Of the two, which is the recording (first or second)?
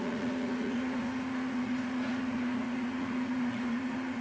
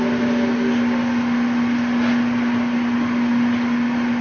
second